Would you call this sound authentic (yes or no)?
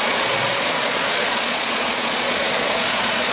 no